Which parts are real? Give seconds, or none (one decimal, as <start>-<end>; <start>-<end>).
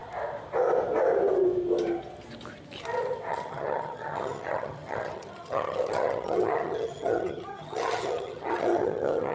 0.0-3.3